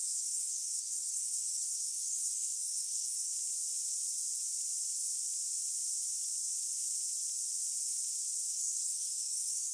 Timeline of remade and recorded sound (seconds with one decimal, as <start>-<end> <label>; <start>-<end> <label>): 0.0-3.3 remade; 3.3-8.5 recorded; 8.5-9.7 remade